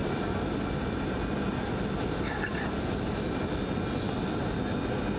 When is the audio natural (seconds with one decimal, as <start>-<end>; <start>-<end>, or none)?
0.0-5.2